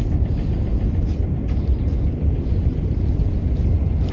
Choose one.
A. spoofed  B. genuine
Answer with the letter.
B